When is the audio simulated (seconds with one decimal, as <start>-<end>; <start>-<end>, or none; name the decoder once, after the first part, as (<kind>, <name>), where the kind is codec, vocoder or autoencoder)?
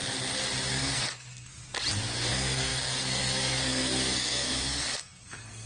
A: 0.7-1.5 (codec, SNAC); 2.3-5.7